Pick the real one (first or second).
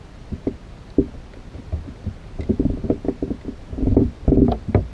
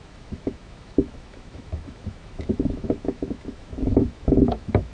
first